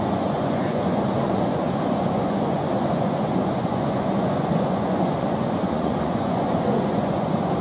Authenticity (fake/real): fake